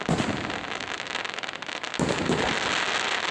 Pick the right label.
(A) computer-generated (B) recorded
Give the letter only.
B